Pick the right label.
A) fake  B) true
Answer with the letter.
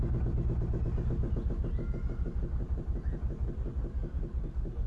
B